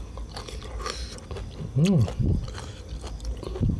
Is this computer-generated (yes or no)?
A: no